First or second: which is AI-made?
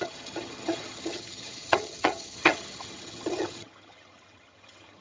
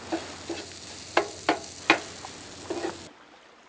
first